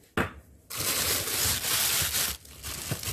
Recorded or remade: recorded